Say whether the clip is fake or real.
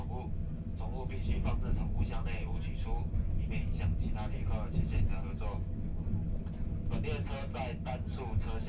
real